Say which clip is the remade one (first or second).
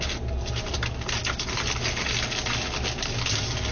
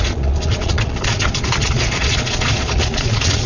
second